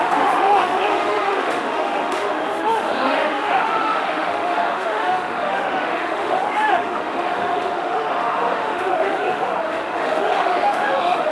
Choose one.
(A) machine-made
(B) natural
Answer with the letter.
A